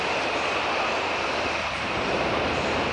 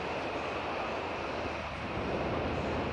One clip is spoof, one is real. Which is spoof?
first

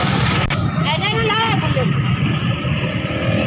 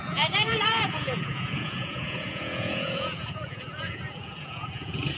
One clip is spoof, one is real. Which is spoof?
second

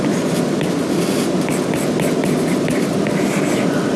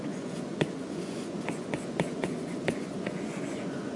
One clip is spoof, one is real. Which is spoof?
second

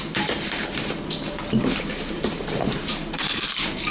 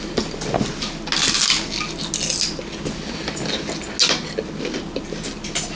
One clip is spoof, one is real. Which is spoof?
first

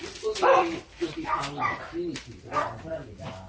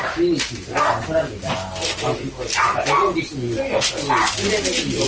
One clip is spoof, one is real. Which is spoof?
first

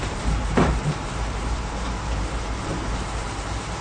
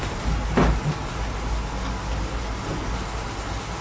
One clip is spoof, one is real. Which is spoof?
first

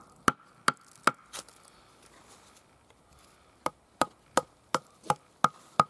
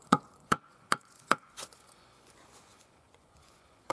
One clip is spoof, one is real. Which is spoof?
second